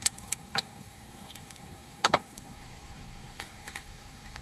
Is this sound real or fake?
fake